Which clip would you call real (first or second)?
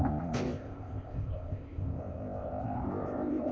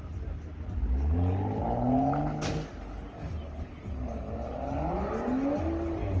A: second